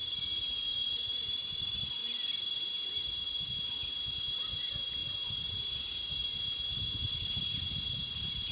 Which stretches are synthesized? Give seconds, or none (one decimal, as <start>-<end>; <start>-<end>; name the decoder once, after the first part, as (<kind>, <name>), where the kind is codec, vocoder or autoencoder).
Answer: 0.0-2.0 (vocoder, BigVGAN v2); 2.6-8.5